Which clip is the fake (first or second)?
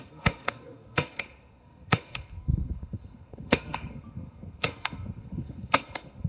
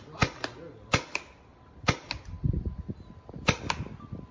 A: first